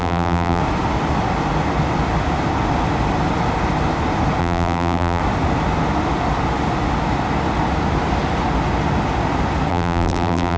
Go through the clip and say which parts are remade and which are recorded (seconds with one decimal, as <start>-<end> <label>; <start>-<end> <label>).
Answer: 0.0-0.6 remade; 0.6-4.4 recorded; 4.4-5.2 remade; 5.2-9.7 recorded; 9.7-10.6 remade